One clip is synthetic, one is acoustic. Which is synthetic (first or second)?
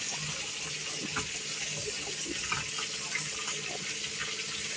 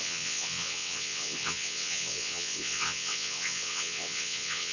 second